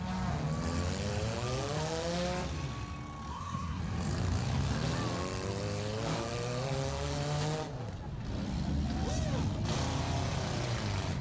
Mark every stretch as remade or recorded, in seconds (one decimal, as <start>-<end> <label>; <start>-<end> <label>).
0.0-3.3 recorded; 3.3-3.8 remade; 3.8-11.2 recorded